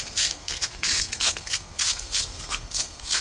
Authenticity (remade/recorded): remade